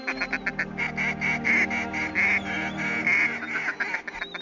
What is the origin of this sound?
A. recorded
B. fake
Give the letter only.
A